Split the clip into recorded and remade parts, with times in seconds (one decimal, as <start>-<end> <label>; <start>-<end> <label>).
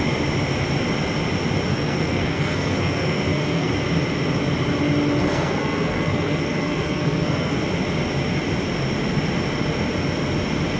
0.0-1.7 recorded; 1.7-3.7 remade; 3.7-5.2 recorded; 5.2-7.6 remade; 7.6-10.8 recorded